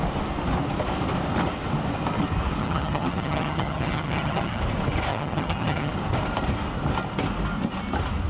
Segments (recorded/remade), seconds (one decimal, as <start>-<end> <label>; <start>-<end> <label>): 0.0-2.6 recorded; 2.6-4.6 remade; 4.6-5.1 recorded; 5.1-5.9 remade; 5.9-8.3 recorded